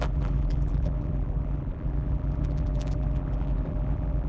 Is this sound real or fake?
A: fake